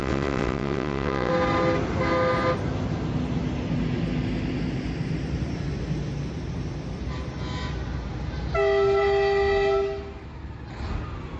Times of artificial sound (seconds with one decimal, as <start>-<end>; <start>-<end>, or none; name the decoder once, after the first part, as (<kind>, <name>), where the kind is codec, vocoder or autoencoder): 0.0-1.3 (vocoder, WaveNeXt)